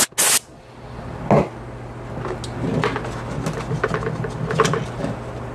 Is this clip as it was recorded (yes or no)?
yes